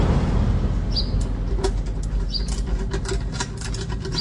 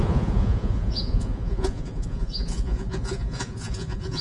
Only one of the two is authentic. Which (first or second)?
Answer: first